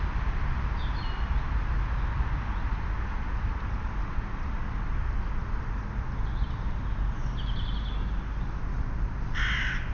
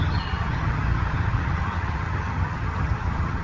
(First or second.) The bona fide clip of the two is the first